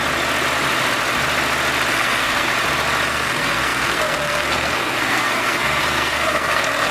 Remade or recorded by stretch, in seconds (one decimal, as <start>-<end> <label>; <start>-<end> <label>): 0.0-1.9 recorded; 1.9-2.5 remade; 2.5-3.1 recorded; 3.1-6.9 remade